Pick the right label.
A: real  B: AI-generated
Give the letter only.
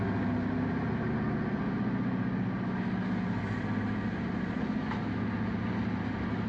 A